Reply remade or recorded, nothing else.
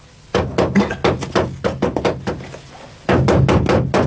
recorded